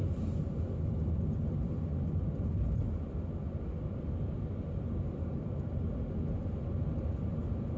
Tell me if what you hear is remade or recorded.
recorded